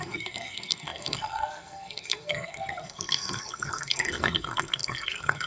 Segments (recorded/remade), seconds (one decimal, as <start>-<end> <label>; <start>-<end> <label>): 0.0-5.5 remade